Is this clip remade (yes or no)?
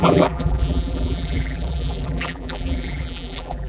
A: yes